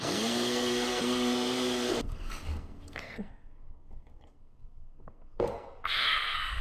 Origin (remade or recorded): remade